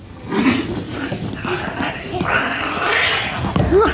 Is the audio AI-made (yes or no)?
no